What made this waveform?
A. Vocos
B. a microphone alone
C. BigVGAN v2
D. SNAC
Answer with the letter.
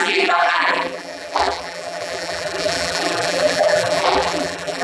C